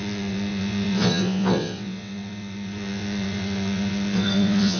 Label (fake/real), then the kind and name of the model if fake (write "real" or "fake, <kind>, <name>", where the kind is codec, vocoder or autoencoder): fake, vocoder, WaveNeXt